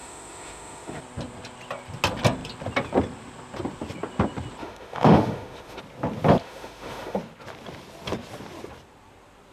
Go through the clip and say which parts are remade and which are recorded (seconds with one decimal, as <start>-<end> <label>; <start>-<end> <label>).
0.0-1.0 remade; 1.0-4.6 recorded; 4.6-5.8 remade; 5.8-6.4 recorded; 6.4-7.2 remade; 7.2-9.5 recorded